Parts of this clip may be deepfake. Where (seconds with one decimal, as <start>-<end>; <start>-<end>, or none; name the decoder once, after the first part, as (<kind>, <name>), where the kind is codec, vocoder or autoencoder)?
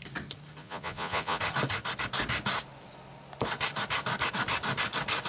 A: 0.6-1.4 (vocoder, Vocos)